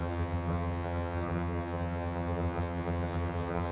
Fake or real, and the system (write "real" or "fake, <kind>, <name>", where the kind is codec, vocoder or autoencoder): fake, vocoder, HiFi-GAN